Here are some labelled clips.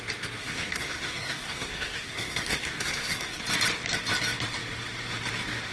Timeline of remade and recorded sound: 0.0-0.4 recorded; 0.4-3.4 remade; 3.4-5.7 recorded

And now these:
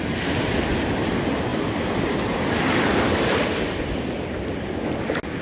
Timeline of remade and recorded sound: 0.0-1.5 recorded; 1.5-4.7 remade; 4.7-5.4 recorded

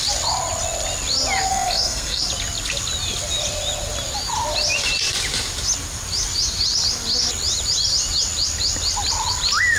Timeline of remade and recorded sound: 0.0-1.5 recorded; 1.5-2.2 remade; 2.2-9.8 recorded

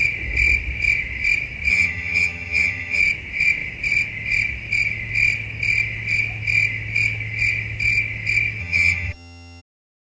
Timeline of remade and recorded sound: 0.0-1.7 recorded; 1.7-3.0 remade; 3.0-8.6 recorded; 8.6-9.6 remade; 9.6-10.1 recorded

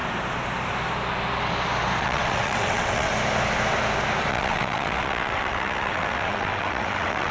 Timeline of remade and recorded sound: 0.0-2.0 recorded; 2.0-3.1 remade; 3.1-4.3 recorded; 4.3-7.3 remade

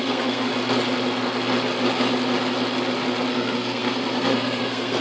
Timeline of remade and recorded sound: 0.0-0.5 remade; 0.5-3.3 recorded; 3.3-5.0 remade